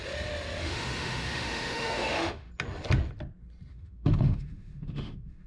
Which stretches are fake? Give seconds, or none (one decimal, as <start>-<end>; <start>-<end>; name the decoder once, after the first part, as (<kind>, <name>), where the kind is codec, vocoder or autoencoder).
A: 0.6-2.5 (autoencoder, DAC-VAE); 3.7-5.5